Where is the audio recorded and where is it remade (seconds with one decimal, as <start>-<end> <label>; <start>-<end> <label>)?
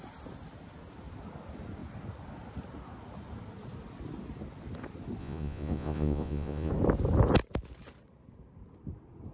0.0-5.2 recorded; 5.2-6.7 remade; 6.7-9.3 recorded